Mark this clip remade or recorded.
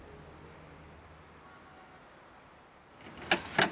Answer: recorded